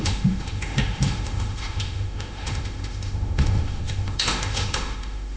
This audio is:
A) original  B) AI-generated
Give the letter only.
B